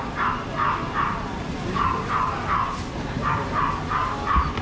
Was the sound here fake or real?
real